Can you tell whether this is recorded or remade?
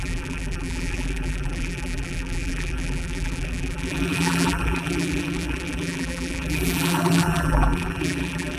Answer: remade